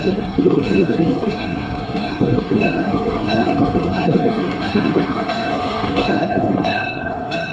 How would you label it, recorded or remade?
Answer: remade